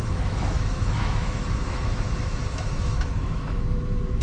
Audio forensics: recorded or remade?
remade